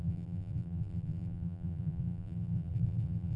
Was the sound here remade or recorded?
remade